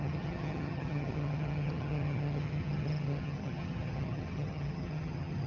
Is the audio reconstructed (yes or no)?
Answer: yes